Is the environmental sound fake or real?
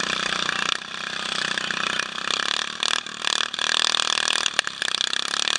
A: real